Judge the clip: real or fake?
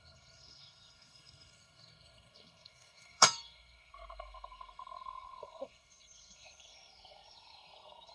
fake